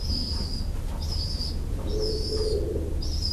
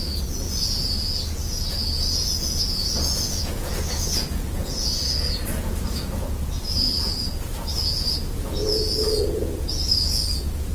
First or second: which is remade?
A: second